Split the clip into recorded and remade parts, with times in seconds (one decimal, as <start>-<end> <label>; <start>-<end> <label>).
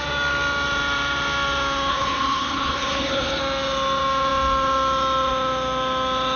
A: 0.0-1.9 recorded; 1.9-3.4 remade; 3.4-6.4 recorded